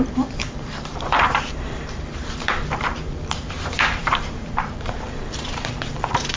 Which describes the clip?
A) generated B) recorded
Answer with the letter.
A